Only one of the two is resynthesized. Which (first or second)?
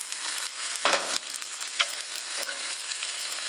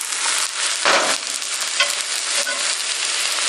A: first